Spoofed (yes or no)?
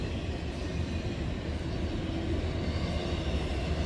no